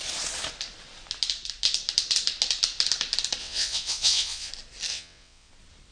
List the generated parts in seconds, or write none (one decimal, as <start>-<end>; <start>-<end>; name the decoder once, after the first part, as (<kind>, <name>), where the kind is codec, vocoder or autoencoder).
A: 3.4-4.5 (vocoder, WaveNeXt); 4.9-5.5